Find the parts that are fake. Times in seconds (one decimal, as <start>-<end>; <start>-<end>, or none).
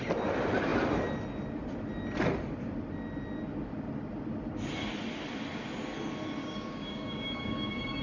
6.4-8.0